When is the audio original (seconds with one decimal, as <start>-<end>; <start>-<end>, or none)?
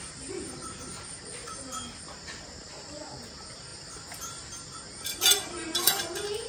0.0-6.5